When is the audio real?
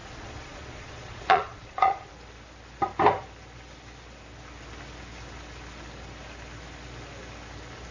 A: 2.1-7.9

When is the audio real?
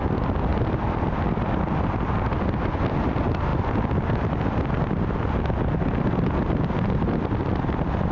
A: 0.0-8.1